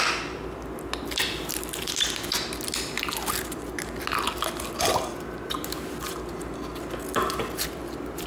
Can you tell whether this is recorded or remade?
recorded